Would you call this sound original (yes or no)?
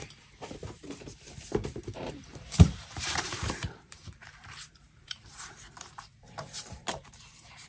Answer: no